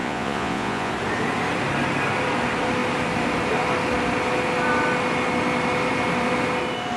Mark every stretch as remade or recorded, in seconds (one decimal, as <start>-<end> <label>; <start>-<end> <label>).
0.0-0.9 remade; 0.9-7.0 recorded

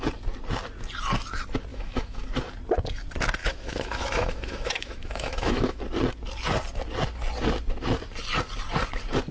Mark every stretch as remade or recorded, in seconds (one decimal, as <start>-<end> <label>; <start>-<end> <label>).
0.0-1.7 recorded; 1.7-2.3 remade; 2.3-3.4 recorded; 3.4-5.8 remade; 5.8-9.3 recorded

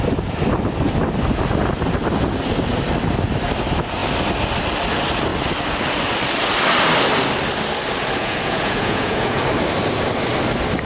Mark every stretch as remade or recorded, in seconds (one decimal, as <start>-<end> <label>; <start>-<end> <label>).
0.0-8.2 recorded; 8.2-9.4 remade; 9.4-10.9 recorded